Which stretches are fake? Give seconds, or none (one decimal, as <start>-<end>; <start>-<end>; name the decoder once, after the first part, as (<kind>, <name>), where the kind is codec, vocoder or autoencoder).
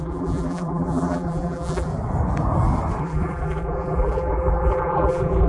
0.0-1.9 (vocoder, BigVGAN v2); 3.0-5.5